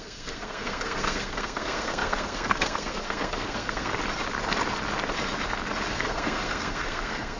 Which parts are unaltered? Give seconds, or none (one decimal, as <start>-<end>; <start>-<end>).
4.0-5.9